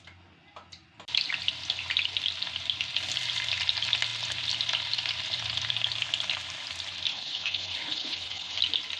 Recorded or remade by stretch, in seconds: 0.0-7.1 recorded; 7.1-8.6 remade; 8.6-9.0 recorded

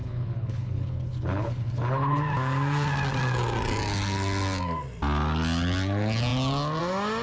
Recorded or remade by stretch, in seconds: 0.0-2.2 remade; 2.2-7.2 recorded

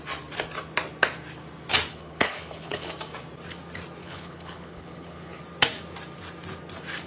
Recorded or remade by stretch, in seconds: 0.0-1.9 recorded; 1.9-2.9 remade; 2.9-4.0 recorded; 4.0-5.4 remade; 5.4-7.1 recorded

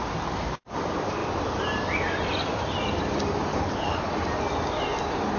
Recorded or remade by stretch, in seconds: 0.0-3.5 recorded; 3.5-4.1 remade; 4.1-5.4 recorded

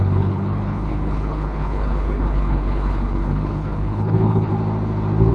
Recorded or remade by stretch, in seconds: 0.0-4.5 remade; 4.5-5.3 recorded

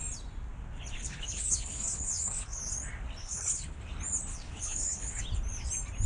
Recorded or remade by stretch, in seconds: 0.0-1.0 recorded; 1.0-2.6 remade; 2.6-3.2 recorded; 3.2-3.8 remade; 3.8-4.3 recorded; 4.3-5.2 remade; 5.2-6.1 recorded

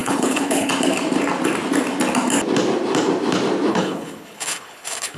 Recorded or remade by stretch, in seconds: 0.0-0.7 remade; 0.7-3.7 recorded; 3.7-5.2 remade